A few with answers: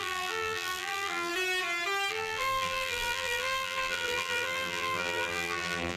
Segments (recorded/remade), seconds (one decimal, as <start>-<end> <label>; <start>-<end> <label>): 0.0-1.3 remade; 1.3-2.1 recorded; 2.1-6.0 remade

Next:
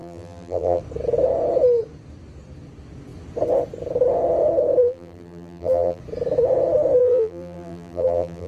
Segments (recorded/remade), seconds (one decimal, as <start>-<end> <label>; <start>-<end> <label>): 0.0-0.8 remade; 0.8-4.8 recorded; 4.8-6.0 remade; 6.0-7.0 recorded; 7.0-8.5 remade

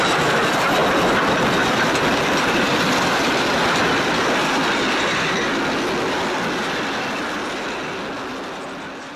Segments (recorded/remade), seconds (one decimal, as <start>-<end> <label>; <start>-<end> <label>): 0.0-9.2 recorded

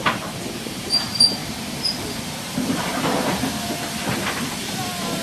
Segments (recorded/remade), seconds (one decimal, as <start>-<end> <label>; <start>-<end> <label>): 0.0-5.2 remade

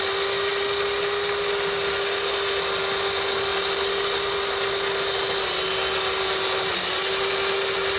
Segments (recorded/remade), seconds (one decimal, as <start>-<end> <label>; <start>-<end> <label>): 0.0-8.0 recorded

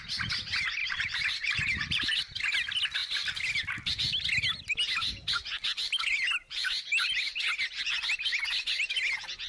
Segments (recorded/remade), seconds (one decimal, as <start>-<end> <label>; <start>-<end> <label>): 0.0-0.8 recorded; 0.8-2.2 remade; 2.2-9.5 recorded